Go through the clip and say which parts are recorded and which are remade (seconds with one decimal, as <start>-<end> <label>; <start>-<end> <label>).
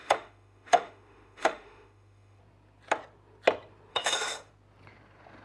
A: 0.0-2.4 remade; 2.4-3.9 recorded; 3.9-4.5 remade; 4.5-5.4 recorded